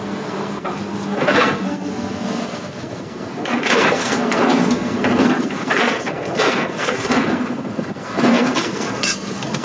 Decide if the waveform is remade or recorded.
remade